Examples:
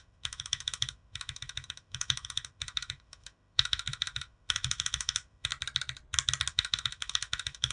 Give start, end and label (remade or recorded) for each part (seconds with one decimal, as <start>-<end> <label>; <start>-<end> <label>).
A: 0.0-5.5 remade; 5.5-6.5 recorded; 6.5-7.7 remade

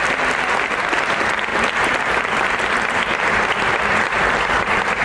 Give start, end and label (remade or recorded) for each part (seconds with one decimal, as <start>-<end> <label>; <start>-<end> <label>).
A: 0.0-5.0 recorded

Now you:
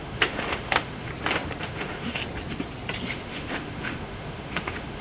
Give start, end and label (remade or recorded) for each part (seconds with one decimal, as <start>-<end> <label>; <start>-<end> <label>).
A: 0.0-1.1 remade; 1.1-1.6 recorded; 1.6-2.2 remade; 2.2-3.1 recorded; 3.1-5.0 remade

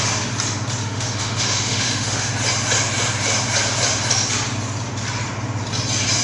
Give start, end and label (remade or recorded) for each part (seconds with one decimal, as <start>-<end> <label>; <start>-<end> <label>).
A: 0.0-0.8 recorded; 0.8-2.3 remade; 2.3-6.2 recorded